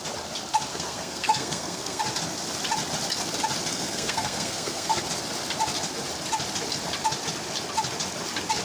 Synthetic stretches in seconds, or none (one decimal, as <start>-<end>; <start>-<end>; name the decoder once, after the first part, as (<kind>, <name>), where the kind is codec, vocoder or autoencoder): 0.7-2.0 (codec, SNAC); 3.7-5.0